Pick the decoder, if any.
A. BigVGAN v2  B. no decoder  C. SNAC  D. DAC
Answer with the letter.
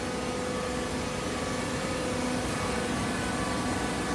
B